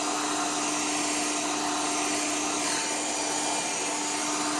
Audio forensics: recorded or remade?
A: recorded